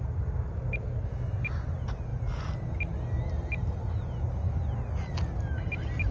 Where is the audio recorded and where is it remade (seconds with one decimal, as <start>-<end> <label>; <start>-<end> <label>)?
0.0-6.1 recorded